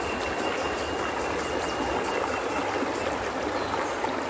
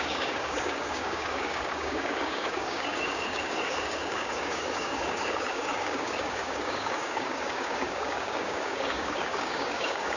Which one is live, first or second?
first